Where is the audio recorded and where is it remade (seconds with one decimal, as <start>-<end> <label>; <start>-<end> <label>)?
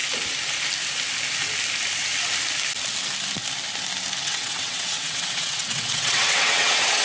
0.0-4.2 recorded; 4.2-7.0 remade